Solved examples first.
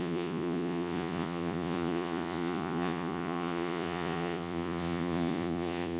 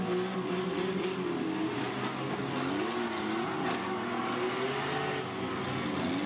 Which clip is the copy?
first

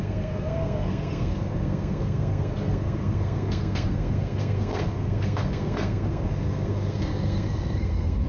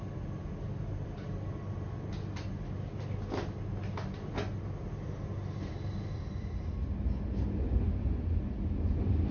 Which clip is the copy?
first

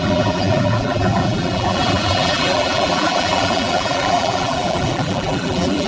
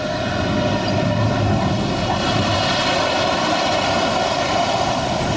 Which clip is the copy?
first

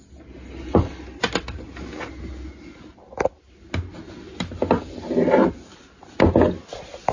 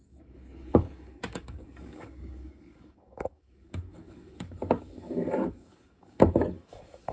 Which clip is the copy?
second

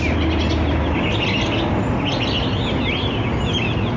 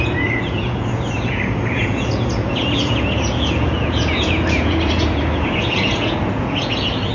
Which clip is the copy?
second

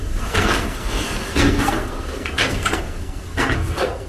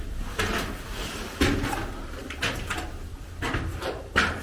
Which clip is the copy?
first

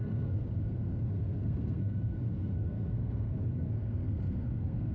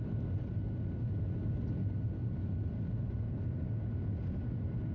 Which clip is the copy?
first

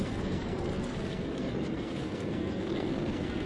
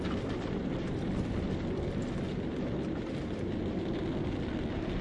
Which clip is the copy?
first